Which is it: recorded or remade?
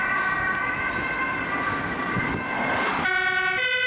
recorded